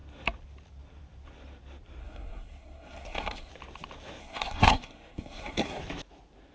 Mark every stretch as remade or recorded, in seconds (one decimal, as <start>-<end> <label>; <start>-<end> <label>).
0.0-2.0 recorded; 2.0-3.5 remade; 3.5-4.2 recorded; 4.2-5.8 remade; 5.8-6.5 recorded